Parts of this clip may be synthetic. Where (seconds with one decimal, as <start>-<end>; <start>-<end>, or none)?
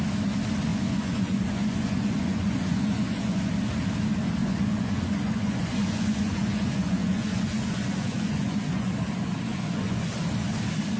0.7-3.5; 4.4-8.9; 9.5-10.1